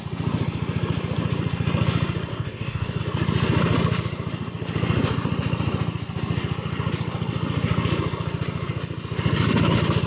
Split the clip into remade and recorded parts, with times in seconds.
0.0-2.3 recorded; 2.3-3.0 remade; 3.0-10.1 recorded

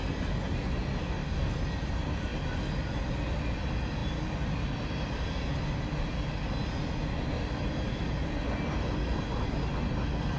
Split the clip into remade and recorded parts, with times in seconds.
0.0-1.0 recorded; 1.0-1.5 remade; 1.5-10.4 recorded